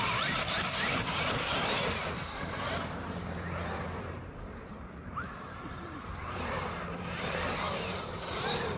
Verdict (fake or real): fake